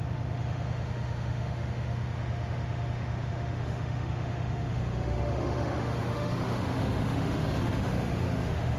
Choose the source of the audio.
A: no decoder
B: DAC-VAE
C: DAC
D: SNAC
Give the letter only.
B